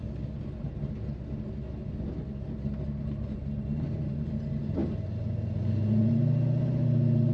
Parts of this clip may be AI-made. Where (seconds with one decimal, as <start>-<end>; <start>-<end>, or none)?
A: none